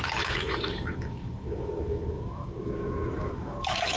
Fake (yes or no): yes